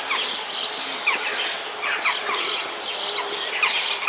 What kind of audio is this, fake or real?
real